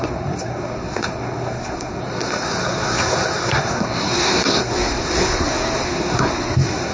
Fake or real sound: fake